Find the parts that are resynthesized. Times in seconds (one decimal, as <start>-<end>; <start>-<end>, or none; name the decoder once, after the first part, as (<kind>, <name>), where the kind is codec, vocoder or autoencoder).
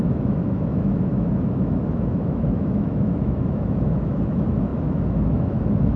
0.0-6.0 (autoencoder, DAC-VAE)